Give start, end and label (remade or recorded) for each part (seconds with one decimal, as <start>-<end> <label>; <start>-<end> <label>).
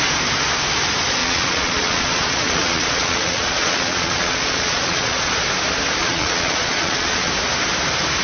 0.0-1.2 recorded; 1.2-5.3 remade; 5.3-6.0 recorded; 6.0-7.3 remade; 7.3-8.2 recorded